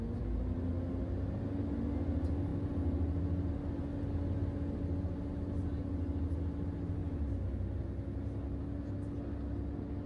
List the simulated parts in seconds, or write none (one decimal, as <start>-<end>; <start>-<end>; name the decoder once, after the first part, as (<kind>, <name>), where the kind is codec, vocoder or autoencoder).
none

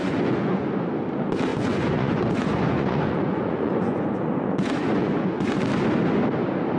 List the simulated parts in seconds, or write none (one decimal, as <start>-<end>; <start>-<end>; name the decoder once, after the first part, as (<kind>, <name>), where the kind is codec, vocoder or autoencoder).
0.0-0.7 (vocoder, Vocos); 1.5-5.6

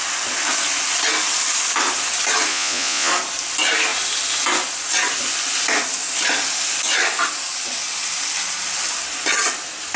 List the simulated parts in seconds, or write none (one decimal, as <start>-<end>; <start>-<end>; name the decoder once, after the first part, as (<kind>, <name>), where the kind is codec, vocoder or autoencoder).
2.5-3.1 (vocoder, Vocos)

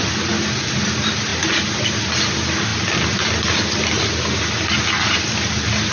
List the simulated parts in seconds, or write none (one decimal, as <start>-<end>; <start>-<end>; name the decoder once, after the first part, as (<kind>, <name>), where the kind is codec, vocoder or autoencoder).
none

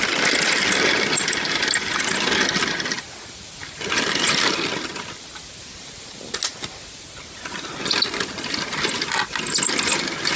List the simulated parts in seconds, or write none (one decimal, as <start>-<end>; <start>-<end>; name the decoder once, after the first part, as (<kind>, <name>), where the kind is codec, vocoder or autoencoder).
none

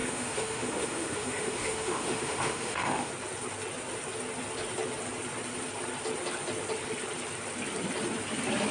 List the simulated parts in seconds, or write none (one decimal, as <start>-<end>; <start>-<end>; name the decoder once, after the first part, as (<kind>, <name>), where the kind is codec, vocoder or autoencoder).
0.0-3.1 (autoencoder, DAC-VAE)

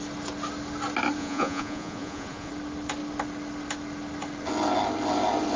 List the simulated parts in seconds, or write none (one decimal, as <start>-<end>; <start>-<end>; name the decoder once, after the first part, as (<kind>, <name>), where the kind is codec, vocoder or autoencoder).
1.2-2.5 (vocoder, Vocos)

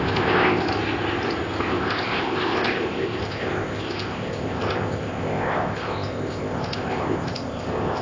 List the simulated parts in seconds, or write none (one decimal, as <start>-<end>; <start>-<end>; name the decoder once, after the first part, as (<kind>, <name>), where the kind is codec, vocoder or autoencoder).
0.0-0.7 (codec, ZipCodec); 1.6-8.0